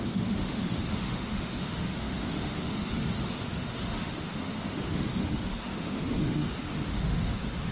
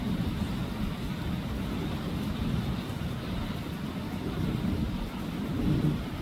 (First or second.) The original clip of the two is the second